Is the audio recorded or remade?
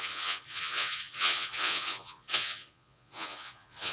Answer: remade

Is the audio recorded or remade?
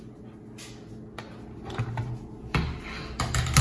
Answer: recorded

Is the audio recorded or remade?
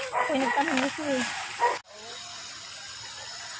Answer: recorded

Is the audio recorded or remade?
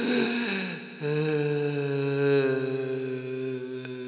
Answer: recorded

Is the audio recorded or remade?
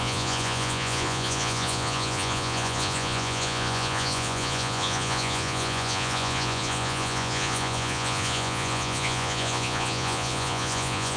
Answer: remade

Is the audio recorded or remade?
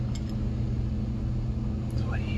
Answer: recorded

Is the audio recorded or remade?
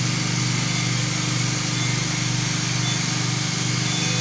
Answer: recorded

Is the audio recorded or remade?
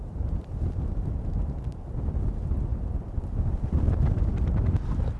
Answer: recorded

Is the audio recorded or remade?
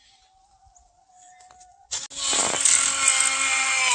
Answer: recorded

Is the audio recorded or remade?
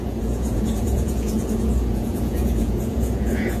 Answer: remade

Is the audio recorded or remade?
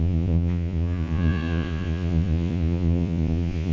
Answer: remade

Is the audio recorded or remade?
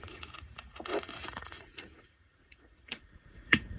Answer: remade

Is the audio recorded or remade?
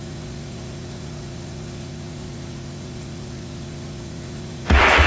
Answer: remade